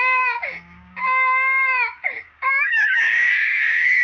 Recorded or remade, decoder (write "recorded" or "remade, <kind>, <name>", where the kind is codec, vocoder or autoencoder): remade, codec, DAC